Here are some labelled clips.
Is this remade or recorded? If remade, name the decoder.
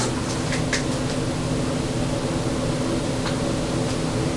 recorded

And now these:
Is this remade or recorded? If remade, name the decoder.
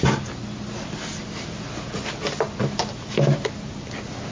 recorded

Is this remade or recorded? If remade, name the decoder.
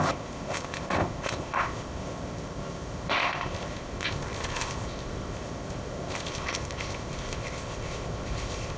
remade, codec, ZipCodec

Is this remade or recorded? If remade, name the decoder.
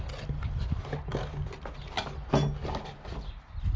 recorded